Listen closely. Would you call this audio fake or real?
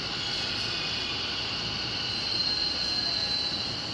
real